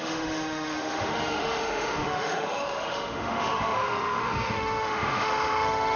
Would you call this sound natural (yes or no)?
no